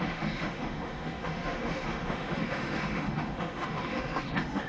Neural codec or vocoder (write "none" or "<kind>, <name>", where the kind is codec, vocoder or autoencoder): autoencoder, DAC-VAE